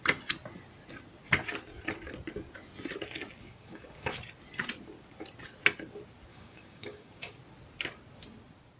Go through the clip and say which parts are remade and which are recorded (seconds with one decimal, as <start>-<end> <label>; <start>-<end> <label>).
0.0-3.4 recorded; 3.4-4.2 remade; 4.2-6.3 recorded; 6.3-7.4 remade; 7.4-8.8 recorded